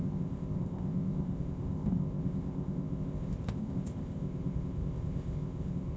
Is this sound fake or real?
fake